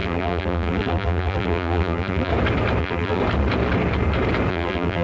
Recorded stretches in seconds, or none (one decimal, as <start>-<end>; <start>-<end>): 2.3-2.8; 3.2-4.5

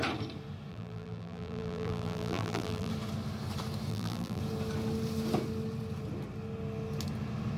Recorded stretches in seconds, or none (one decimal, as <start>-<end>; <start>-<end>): 0.0-0.7; 2.9-3.9; 4.4-7.6

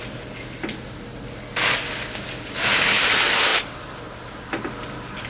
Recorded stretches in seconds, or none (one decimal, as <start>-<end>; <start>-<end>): 0.0-5.3

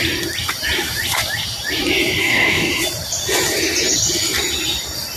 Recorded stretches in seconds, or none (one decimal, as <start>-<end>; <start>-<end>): 0.0-2.2; 2.7-5.2

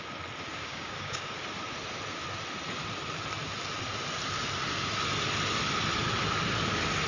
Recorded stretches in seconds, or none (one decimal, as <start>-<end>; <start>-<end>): 0.0-0.5; 1.3-7.1

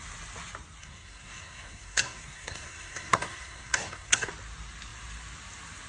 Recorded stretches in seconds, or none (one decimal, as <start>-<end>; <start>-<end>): 0.0-0.8; 4.3-5.9